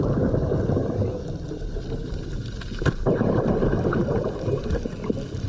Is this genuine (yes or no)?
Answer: yes